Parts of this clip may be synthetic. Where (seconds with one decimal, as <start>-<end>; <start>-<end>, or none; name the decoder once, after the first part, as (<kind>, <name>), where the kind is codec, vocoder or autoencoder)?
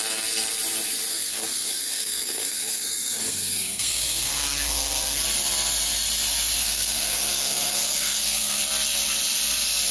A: 1.1-5.2 (codec, SNAC); 6.6-8.6